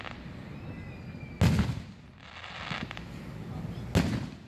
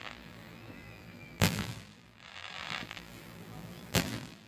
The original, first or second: first